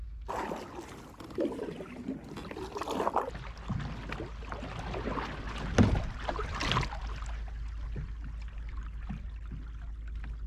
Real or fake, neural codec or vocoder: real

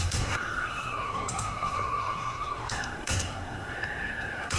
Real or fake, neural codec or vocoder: fake, codec, SNAC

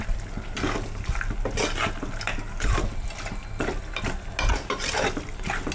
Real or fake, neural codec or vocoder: real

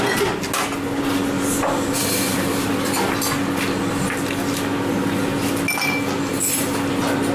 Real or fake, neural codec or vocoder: real